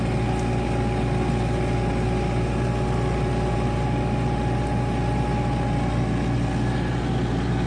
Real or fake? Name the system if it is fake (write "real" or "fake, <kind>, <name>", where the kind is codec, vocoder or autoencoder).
real